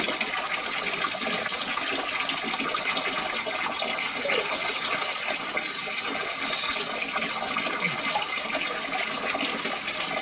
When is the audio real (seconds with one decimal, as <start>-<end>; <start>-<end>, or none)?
0.0-10.2